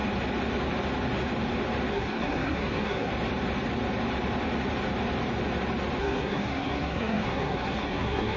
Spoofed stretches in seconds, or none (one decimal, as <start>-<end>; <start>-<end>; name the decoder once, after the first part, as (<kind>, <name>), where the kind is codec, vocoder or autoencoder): 1.9-3.1 (codec, SNAC); 6.0-8.4